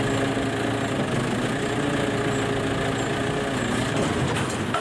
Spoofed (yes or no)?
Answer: no